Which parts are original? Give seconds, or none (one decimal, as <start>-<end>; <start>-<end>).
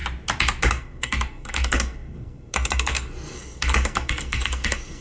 0.0-0.7